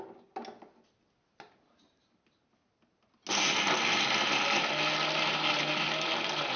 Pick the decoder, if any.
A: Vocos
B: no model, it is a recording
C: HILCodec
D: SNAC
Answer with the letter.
B